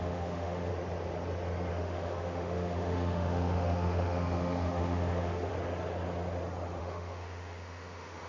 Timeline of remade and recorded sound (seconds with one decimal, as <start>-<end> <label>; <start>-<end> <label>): 0.0-0.7 remade; 0.7-1.7 recorded; 1.7-5.5 remade; 5.5-6.8 recorded; 6.8-8.3 remade